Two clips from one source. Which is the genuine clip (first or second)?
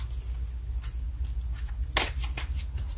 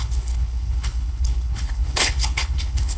first